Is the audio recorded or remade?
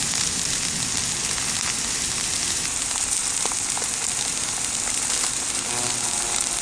recorded